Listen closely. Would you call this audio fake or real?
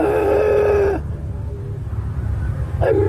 real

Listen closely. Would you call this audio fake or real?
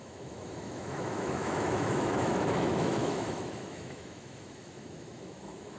fake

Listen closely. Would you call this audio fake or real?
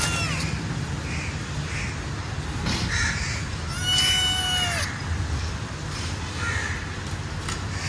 real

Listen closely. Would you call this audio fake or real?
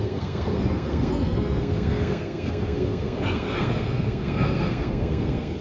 fake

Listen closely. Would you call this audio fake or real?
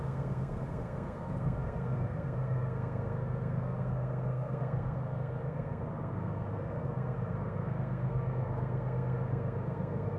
fake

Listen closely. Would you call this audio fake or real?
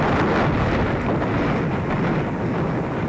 real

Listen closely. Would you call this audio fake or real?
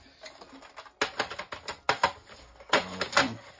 real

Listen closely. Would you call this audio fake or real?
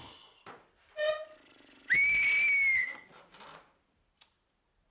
real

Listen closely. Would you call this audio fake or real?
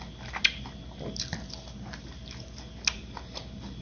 real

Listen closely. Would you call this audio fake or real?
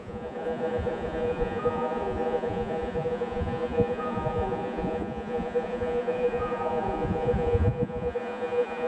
fake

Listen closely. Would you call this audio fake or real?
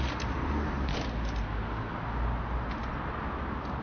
real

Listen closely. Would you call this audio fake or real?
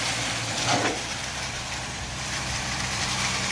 fake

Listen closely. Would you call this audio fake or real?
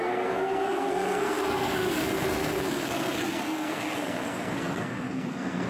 fake